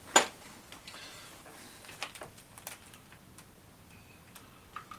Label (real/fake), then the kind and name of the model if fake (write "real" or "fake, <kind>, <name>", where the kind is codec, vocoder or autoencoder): real